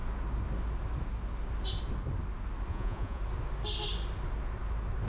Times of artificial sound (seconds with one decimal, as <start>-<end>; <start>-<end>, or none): 2.7-3.2